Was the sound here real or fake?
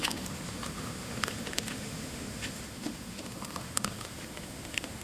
fake